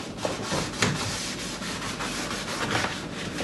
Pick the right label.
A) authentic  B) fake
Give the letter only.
A